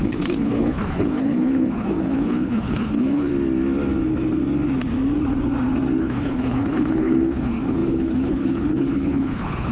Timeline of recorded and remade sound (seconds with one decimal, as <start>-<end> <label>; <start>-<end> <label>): 0.0-3.3 remade; 3.3-6.0 recorded; 6.0-9.7 remade